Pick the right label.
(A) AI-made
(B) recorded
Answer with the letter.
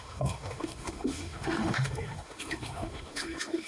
A